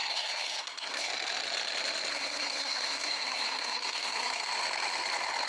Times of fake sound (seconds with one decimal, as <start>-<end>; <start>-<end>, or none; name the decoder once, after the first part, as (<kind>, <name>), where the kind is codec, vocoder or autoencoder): 0.0-1.1 (codec, SNAC); 2.1-4.5

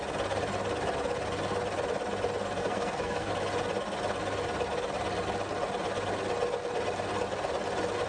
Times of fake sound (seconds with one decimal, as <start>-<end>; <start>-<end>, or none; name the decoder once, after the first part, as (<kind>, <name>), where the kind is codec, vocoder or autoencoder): 2.6-3.3 (codec, SNAC)